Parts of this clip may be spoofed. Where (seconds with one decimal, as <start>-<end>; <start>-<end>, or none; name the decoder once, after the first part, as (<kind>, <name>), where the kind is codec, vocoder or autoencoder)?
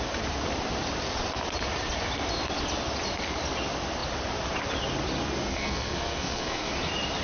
5.5-6.7 (codec, SNAC)